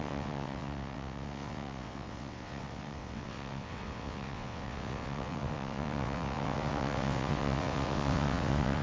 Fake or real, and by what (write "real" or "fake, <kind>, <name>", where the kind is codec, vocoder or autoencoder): fake, vocoder, WaveNeXt